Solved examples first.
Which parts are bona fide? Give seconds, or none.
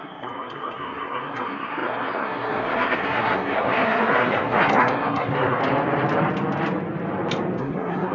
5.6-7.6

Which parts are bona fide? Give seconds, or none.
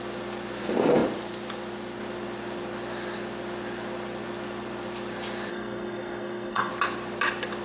0.0-5.5; 6.7-7.6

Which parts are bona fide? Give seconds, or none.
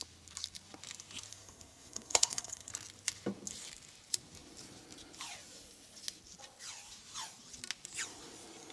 0.0-1.3; 2.7-8.7